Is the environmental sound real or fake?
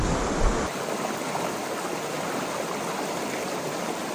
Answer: real